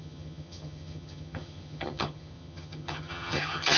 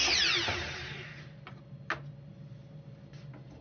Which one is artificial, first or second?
first